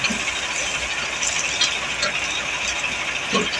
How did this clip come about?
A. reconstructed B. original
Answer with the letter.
B